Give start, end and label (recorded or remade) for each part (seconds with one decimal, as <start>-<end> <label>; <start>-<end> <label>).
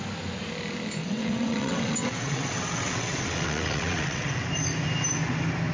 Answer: 0.0-1.0 recorded; 1.0-4.4 remade; 4.4-5.7 recorded